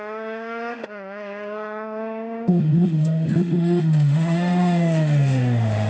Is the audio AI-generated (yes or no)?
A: yes